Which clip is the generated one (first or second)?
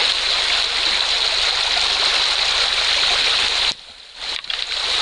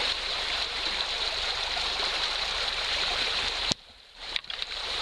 second